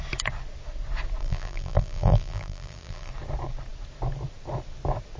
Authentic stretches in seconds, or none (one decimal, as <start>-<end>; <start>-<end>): 0.0-1.2; 3.1-5.2

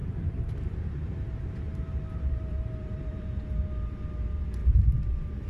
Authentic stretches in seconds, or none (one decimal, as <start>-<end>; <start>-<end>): 3.3-4.6

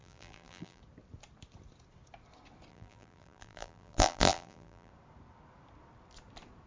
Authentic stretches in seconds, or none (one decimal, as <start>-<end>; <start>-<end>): 0.8-2.7; 4.9-6.7

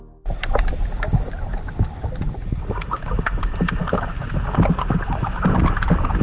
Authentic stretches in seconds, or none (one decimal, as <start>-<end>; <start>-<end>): 0.0-6.2

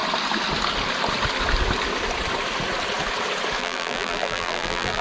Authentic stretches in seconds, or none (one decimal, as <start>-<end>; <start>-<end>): 0.0-3.6

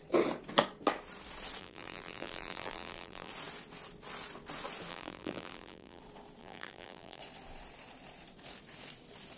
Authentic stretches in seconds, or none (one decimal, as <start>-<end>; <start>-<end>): 0.0-1.6; 3.3-4.9; 6.0-6.4; 7.2-9.4

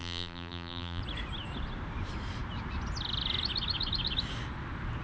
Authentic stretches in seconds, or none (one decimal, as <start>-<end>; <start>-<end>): 1.0-5.0